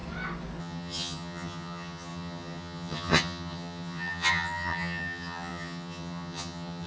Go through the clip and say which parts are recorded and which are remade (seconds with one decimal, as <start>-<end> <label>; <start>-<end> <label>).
0.0-0.6 recorded; 0.6-6.9 remade